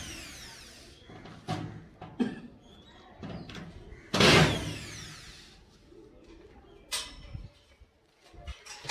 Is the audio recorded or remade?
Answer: recorded